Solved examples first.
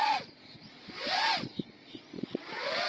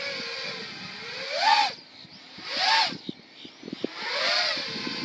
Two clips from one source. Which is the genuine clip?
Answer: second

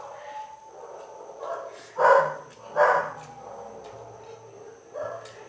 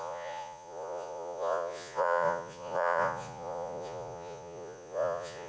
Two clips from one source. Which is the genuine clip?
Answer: first